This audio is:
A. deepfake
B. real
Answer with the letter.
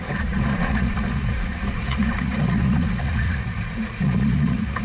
A